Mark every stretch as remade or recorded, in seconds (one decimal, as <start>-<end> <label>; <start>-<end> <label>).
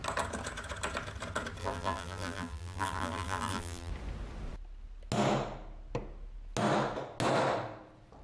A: 0.0-1.6 recorded; 1.6-3.9 remade; 3.9-8.2 recorded